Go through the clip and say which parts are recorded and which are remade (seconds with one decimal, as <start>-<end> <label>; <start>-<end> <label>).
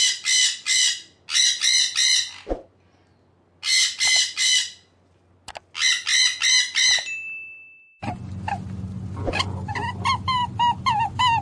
0.0-11.4 recorded